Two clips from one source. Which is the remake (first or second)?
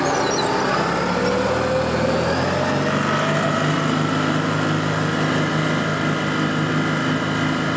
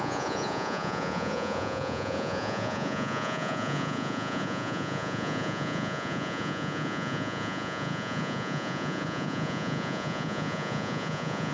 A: second